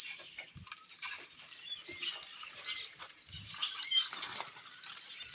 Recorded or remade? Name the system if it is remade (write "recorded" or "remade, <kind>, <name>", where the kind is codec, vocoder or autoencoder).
remade, vocoder, BigVGAN v2